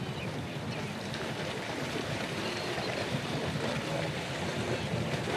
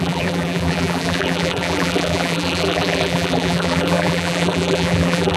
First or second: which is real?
first